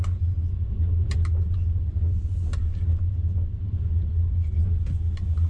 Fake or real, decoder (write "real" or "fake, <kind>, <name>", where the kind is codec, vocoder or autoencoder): real